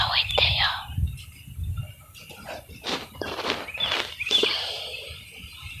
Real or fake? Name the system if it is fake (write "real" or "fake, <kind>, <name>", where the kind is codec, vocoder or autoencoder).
fake, vocoder, BigVGAN v2